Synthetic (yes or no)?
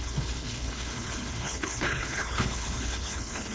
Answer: yes